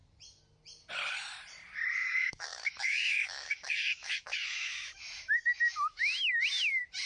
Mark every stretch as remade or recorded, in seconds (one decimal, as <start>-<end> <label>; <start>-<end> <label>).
0.0-2.0 recorded; 2.0-6.3 remade; 6.3-7.1 recorded